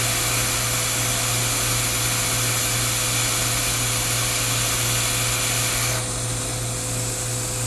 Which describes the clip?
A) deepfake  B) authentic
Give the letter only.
B